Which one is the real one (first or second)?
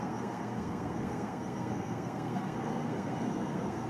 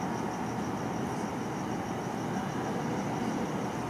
second